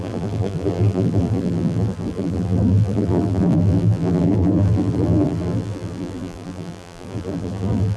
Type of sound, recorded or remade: remade